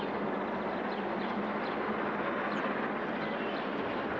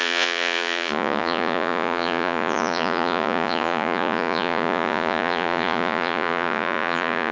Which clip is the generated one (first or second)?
second